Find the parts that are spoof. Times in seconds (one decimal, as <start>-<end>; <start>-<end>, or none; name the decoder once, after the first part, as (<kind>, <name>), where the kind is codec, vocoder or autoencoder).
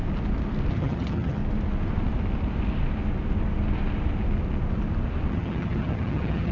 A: 0.7-1.4 (vocoder, HiFi-GAN); 5.3-6.5